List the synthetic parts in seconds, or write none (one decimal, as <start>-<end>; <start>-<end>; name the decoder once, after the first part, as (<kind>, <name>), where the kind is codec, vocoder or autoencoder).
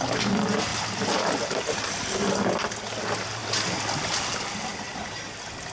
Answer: none